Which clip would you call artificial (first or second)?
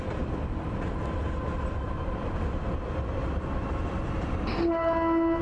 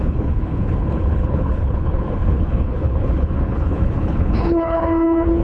second